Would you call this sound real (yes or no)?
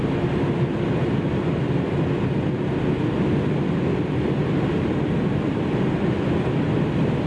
yes